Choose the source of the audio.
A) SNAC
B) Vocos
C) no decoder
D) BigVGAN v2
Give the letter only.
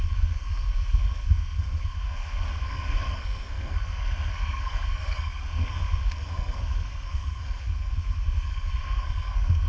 A